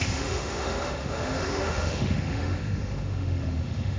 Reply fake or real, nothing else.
fake